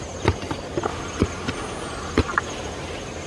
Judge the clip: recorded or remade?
recorded